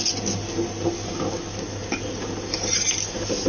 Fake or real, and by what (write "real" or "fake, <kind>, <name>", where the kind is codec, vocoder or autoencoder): real